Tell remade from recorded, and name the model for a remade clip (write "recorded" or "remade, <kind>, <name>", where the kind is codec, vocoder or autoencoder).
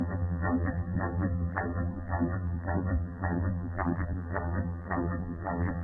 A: remade, vocoder, BigVGAN v2